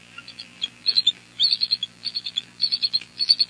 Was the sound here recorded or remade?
remade